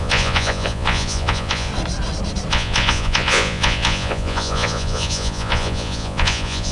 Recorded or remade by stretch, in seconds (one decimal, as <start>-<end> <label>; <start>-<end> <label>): 0.0-1.7 remade; 1.7-2.5 recorded; 2.5-6.7 remade